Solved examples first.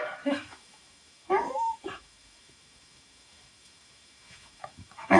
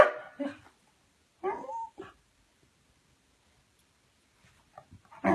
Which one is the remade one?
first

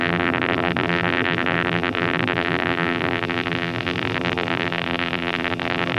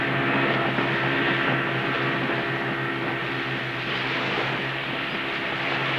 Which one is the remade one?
first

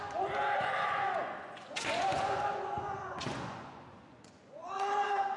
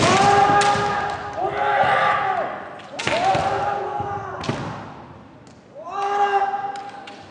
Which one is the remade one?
first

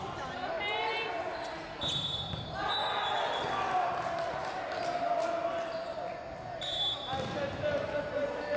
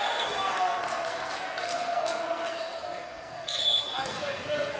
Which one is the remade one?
second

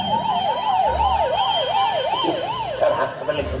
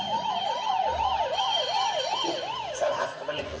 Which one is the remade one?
second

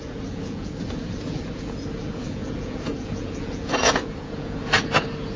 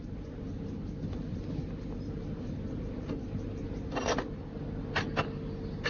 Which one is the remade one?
first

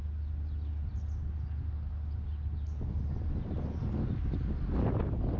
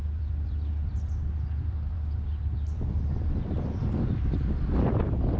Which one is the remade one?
second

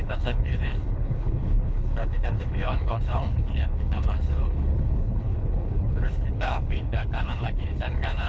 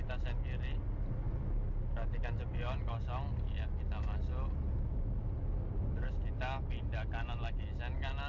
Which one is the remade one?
first